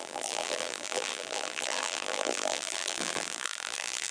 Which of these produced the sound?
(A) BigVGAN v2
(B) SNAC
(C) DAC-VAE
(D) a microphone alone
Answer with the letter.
A